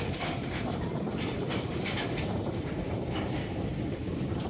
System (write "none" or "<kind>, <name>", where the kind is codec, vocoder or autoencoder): vocoder, BigVGAN v2